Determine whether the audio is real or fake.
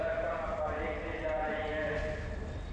real